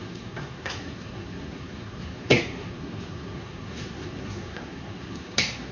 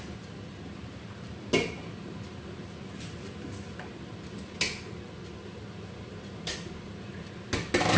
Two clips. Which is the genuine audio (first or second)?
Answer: second